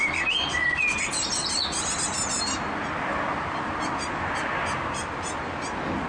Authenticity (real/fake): real